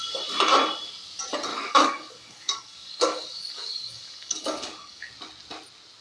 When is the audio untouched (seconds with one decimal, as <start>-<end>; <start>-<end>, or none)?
0.0-1.5; 5.1-6.0